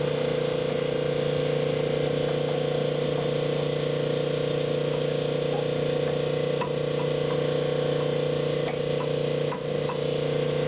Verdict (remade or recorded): recorded